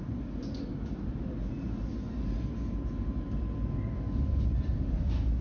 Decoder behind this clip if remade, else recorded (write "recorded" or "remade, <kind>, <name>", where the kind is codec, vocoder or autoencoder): recorded